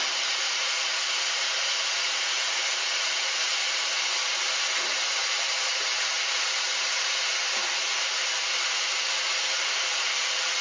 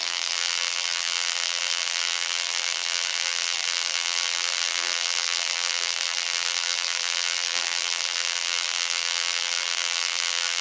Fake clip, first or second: second